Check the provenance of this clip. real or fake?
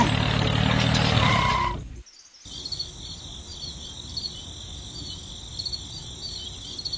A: real